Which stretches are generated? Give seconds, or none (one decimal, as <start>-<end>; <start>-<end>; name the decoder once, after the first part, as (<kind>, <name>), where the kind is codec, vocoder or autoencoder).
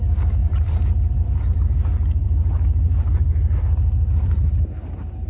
0.4-3.6 (vocoder, BigVGAN v2)